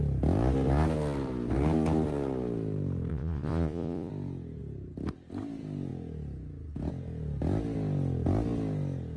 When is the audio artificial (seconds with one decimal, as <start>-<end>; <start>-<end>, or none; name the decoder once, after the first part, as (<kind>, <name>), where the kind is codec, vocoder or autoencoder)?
3.1-4.1 (vocoder, Vocos)